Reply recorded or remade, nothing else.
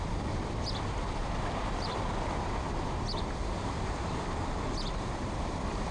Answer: remade